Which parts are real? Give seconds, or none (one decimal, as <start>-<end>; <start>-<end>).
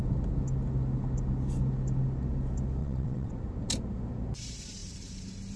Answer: 0.0-2.8; 3.3-5.6